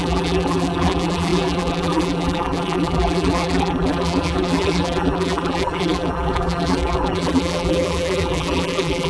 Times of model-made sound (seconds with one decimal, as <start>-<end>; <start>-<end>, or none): 0.0-9.1